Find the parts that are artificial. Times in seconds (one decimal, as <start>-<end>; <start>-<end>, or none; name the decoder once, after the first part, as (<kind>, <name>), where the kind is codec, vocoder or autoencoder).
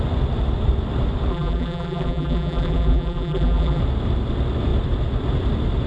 1.3-3.8 (vocoder, BigVGAN v2)